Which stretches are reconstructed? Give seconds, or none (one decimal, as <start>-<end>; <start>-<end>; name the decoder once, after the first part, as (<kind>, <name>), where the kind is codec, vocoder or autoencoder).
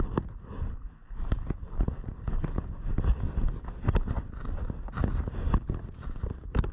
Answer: none